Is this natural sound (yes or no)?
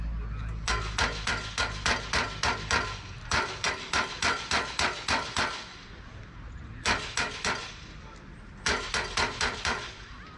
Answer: yes